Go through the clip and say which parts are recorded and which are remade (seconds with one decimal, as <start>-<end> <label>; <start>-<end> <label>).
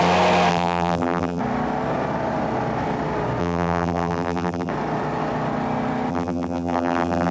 0.0-0.5 recorded; 0.5-1.4 remade; 1.4-3.4 recorded; 3.4-4.7 remade; 4.7-6.1 recorded; 6.1-7.3 remade